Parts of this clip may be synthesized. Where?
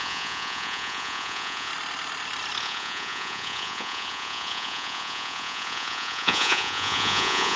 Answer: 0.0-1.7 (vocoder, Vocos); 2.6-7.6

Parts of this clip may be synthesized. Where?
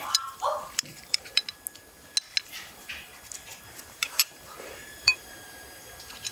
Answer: 0.0-1.4 (vocoder, BigVGAN v2); 2.4-3.1; 3.9-6.3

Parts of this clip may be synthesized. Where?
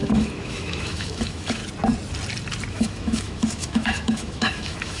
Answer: 0.0-1.6 (autoencoder, DAC-VAE); 2.7-5.0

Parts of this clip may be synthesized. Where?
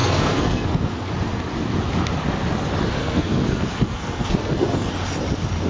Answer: 0.0-1.1 (codec, SNAC); 3.0-4.9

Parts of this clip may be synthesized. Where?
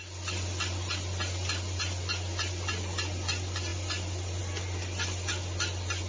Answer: none